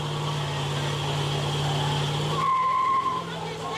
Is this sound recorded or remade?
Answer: recorded